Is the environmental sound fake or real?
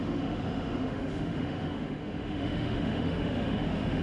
fake